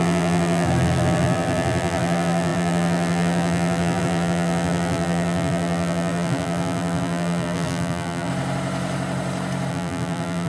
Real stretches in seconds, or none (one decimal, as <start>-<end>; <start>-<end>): 8.3-9.7